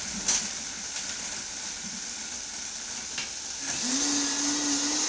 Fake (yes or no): no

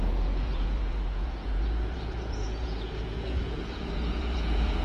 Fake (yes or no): yes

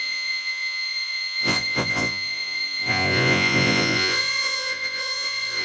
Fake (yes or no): yes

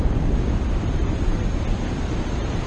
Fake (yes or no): no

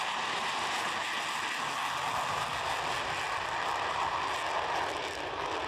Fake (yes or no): no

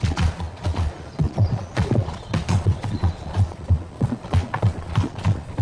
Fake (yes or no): yes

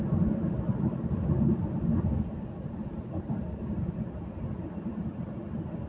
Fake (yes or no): no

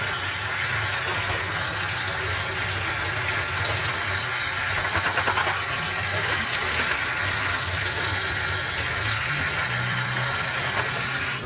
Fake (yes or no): no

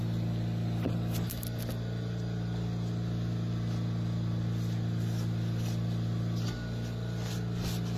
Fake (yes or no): no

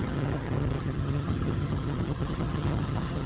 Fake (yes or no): yes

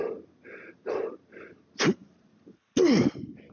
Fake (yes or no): no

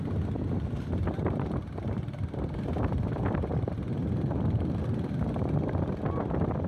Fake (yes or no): no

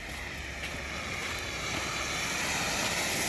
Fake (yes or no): no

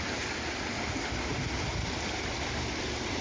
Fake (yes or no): no